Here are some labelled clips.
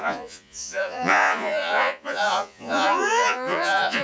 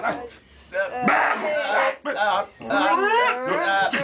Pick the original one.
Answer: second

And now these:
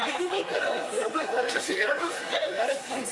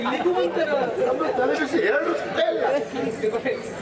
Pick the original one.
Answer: second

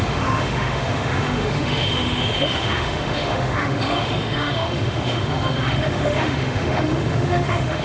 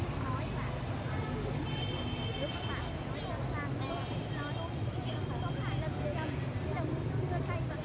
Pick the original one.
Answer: second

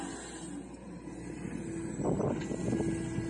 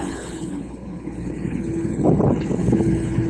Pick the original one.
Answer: first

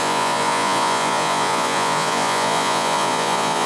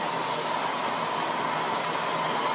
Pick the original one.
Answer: second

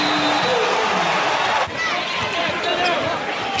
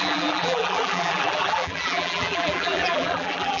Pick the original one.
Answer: first